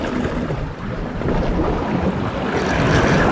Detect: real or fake real